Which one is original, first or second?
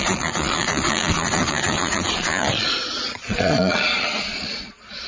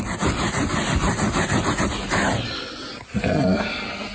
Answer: second